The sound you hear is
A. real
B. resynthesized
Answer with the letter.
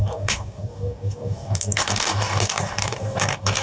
B